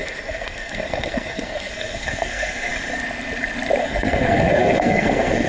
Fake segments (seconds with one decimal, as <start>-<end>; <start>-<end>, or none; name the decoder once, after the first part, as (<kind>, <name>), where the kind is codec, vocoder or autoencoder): 0.0-2.7 (codec, SNAC); 3.8-5.5